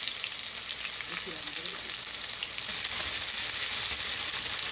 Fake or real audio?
real